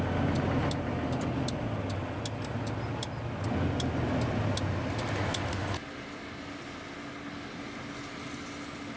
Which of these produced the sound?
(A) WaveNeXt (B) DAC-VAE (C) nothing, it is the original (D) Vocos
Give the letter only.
C